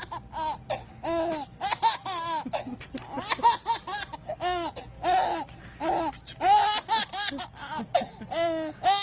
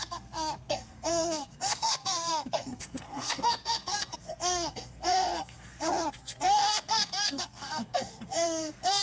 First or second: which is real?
first